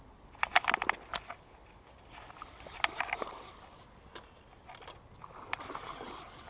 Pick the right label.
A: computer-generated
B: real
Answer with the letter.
B